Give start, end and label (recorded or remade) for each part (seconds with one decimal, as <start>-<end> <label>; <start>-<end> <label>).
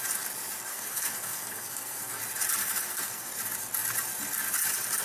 0.0-0.7 recorded; 0.7-2.2 remade; 2.2-2.6 recorded; 2.6-3.3 remade; 3.3-5.0 recorded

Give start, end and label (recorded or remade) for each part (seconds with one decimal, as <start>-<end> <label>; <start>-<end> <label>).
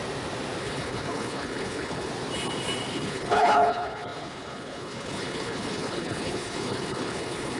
0.0-0.6 recorded; 0.6-2.1 remade; 2.1-2.9 recorded; 2.9-7.6 remade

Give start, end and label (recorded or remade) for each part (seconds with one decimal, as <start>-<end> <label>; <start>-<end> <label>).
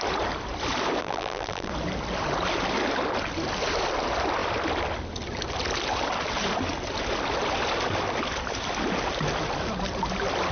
0.0-1.0 recorded; 1.0-1.7 remade; 1.7-10.5 recorded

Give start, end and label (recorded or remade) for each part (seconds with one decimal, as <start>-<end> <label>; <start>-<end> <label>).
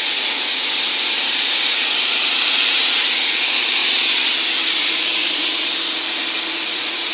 0.0-3.8 remade; 3.8-4.8 recorded; 4.8-5.5 remade; 5.5-6.5 recorded; 6.5-7.1 remade